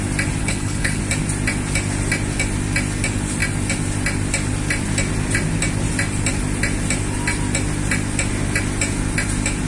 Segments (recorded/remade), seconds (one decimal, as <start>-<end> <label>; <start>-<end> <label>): 0.0-0.4 recorded; 0.4-1.0 remade; 1.0-9.7 recorded